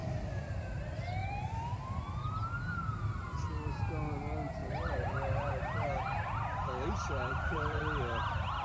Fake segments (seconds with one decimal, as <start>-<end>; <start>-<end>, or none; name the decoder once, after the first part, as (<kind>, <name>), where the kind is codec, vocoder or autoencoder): 0.0-0.5 (vocoder, BigVGAN v2); 1.2-1.7; 4.6-5.5; 7.3-7.8